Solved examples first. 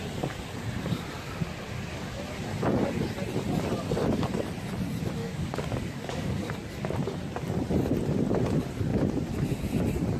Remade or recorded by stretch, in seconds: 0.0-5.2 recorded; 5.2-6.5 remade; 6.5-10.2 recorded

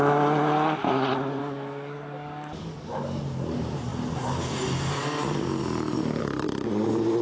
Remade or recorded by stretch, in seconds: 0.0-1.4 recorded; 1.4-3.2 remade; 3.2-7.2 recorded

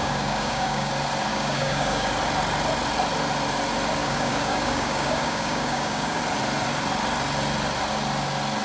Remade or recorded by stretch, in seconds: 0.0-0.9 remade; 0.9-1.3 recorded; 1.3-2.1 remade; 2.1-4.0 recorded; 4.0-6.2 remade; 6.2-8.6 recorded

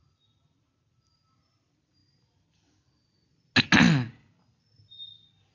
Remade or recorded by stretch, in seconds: 0.0-5.5 recorded

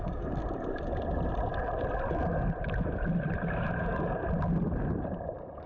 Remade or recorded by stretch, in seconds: 0.0-0.4 remade; 0.4-3.8 recorded; 3.8-4.2 remade; 4.2-5.7 recorded

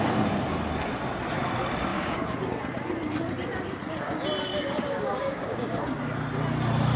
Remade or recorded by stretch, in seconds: 0.0-1.9 recorded; 1.9-2.5 remade; 2.5-4.5 recorded; 4.5-5.8 remade; 5.8-7.0 recorded

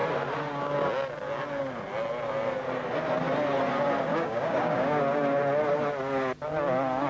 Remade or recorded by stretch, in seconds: 0.0-4.1 recorded; 4.1-5.0 remade; 5.0-7.1 recorded